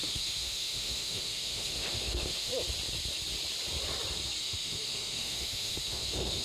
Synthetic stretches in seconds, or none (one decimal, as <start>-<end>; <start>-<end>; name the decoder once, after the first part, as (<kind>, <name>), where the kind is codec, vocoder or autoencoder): 0.0-2.5 (autoencoder, DAC-VAE); 4.4-6.4